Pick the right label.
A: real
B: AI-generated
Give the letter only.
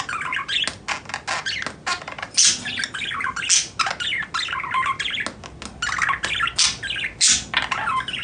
A